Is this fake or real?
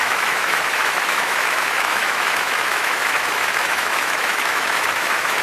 fake